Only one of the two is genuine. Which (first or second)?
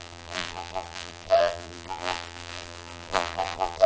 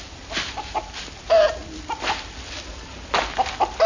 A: second